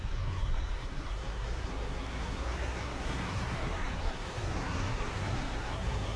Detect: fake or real fake